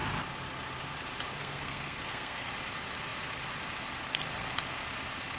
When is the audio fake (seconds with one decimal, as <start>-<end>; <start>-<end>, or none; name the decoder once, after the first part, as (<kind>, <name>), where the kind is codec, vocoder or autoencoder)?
1.4-2.5 (codec, SNAC)